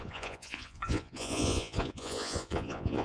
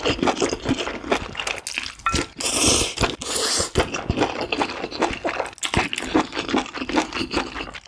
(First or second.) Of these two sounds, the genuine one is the second